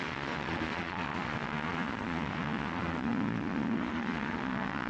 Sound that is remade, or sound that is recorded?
remade